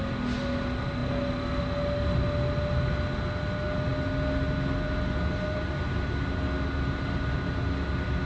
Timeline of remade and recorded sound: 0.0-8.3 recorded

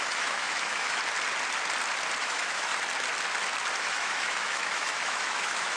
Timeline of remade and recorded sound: 0.0-1.0 remade; 1.0-2.2 recorded; 2.2-2.7 remade; 2.7-3.8 recorded; 3.8-5.8 remade